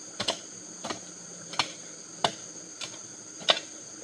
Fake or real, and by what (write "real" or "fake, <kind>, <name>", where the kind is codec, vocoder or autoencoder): real